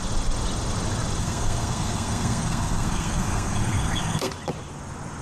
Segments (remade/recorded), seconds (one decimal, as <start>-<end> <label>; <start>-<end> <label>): 0.0-1.2 recorded; 1.2-4.3 remade; 4.3-5.2 recorded